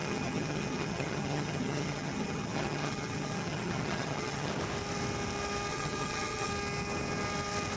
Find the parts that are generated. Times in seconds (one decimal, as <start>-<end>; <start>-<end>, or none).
0.0-4.5; 5.7-6.5